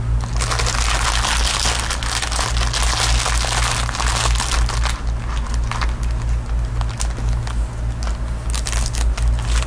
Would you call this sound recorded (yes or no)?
yes